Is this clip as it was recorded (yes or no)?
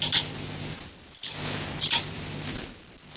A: yes